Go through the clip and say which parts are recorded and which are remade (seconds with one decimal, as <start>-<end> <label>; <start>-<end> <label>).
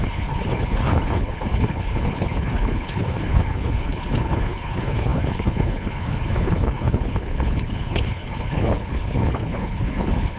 0.0-10.4 remade